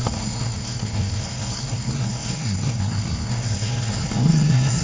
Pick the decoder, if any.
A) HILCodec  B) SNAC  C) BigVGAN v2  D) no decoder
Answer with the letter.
B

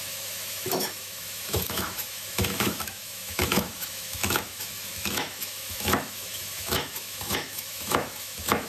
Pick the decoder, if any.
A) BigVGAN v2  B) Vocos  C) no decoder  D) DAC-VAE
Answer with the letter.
D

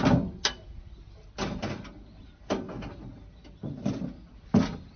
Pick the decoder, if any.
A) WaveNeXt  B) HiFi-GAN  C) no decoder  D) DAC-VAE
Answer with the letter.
C